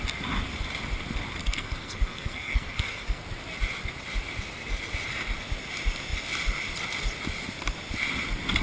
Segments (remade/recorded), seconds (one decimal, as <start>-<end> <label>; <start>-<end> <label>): 0.0-1.4 recorded; 1.4-3.2 remade; 3.2-8.6 recorded

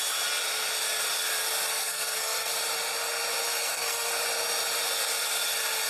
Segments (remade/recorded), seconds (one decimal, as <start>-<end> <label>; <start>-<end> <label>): 0.0-1.7 recorded; 1.7-2.5 remade; 2.5-3.6 recorded; 3.6-4.1 remade; 4.1-5.9 recorded

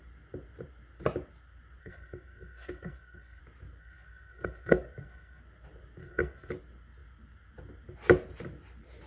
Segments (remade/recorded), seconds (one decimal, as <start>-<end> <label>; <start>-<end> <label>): 0.0-1.8 recorded; 1.8-3.4 remade; 3.4-3.8 recorded; 3.8-5.4 remade; 5.4-6.0 recorded; 6.0-6.5 remade; 6.5-9.1 recorded

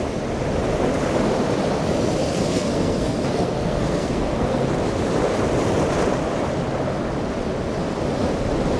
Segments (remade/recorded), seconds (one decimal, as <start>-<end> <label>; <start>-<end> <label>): 0.0-2.2 recorded; 2.2-4.7 remade; 4.7-8.8 recorded

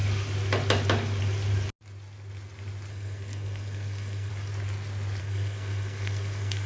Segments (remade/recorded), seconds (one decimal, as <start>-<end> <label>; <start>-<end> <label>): 0.0-2.9 recorded; 2.9-4.3 remade; 4.3-5.2 recorded; 5.2-6.7 remade

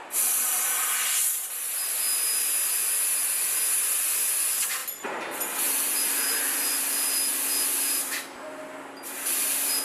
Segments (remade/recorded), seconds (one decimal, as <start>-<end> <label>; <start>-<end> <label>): 0.0-9.8 recorded

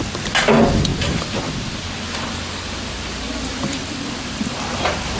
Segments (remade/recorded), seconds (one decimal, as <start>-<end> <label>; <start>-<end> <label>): 0.0-5.2 recorded

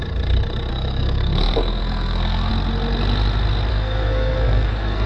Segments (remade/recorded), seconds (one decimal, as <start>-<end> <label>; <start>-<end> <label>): 0.0-0.7 recorded; 0.7-2.5 remade; 2.5-3.7 recorded; 3.7-5.1 remade